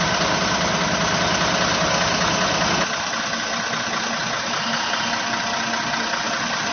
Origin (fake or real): real